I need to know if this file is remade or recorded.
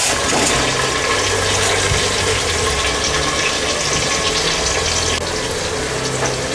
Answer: recorded